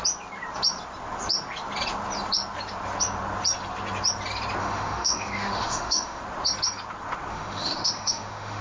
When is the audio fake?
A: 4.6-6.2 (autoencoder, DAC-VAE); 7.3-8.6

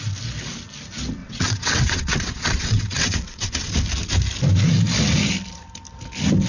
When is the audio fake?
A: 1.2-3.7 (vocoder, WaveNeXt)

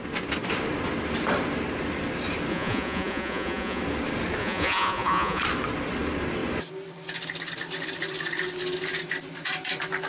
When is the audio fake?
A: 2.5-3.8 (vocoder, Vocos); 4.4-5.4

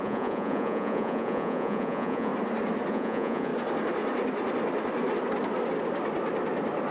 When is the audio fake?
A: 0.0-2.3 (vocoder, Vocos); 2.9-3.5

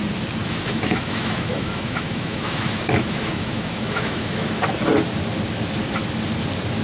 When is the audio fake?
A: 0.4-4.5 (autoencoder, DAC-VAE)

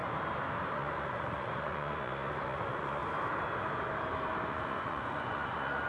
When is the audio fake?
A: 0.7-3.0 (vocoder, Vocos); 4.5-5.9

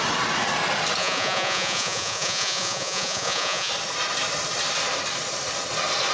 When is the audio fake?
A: 1.0-3.7 (vocoder, Vocos)